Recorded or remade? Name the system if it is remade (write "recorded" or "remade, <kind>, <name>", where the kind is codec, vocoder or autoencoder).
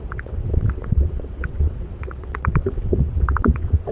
remade, vocoder, WaveNeXt